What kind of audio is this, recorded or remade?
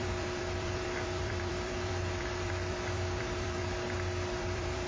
remade